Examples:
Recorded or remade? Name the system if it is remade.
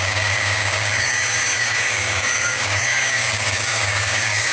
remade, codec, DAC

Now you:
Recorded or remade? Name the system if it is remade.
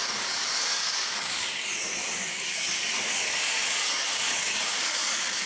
remade, codec, DAC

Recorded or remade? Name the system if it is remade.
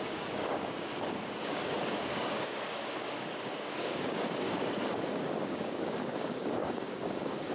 remade, codec, DAC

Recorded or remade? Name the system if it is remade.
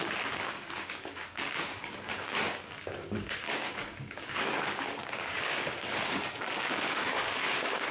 remade, codec, DAC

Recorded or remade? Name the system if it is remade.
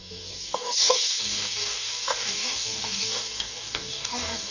remade, codec, DAC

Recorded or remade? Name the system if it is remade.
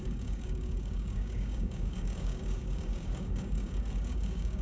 remade, codec, DAC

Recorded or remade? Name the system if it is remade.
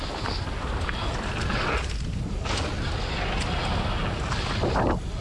recorded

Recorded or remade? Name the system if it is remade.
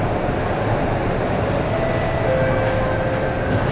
recorded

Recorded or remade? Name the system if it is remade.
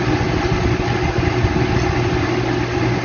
recorded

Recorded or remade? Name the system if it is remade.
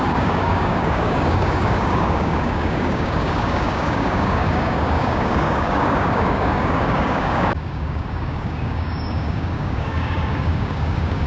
remade, codec, DAC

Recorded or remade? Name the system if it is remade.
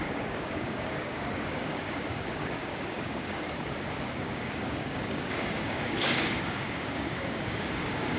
remade, codec, DAC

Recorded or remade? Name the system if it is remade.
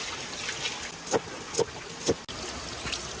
recorded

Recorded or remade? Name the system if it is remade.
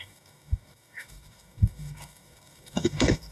remade, codec, DAC